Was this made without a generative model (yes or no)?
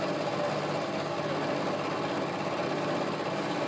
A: yes